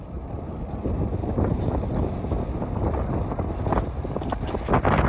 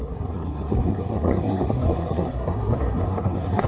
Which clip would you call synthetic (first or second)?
second